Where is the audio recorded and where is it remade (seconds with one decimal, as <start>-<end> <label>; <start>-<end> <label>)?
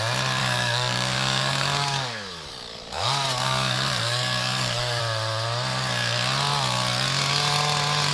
0.0-0.4 recorded; 0.4-5.0 remade; 5.0-8.1 recorded